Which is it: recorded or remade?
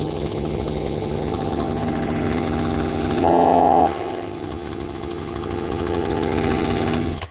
remade